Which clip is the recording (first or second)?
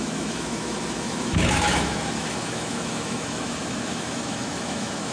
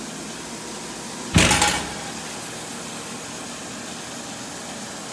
second